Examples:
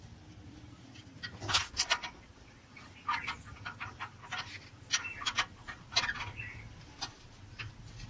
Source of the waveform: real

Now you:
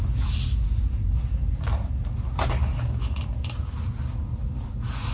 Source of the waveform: real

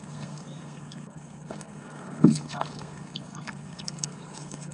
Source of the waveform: fake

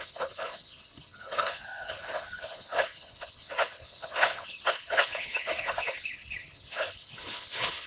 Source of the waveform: fake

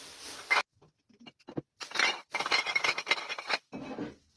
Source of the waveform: real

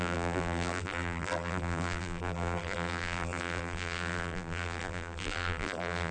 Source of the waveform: fake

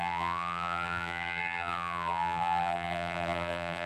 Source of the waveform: fake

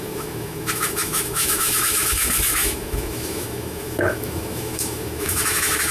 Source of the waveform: fake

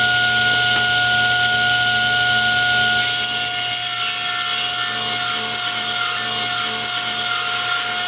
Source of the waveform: real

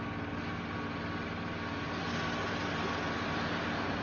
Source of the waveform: real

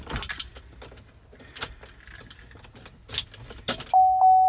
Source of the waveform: real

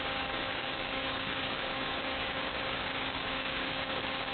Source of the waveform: fake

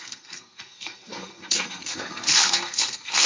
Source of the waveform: fake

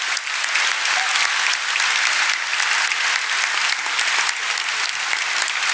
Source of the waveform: real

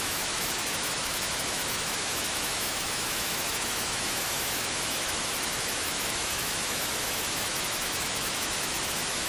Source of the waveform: fake